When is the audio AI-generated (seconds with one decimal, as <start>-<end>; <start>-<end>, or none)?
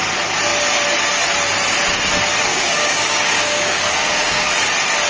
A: 2.5-4.5